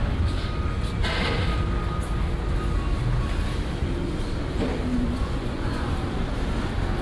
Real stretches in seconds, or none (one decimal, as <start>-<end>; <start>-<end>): 0.0-4.9; 5.9-7.0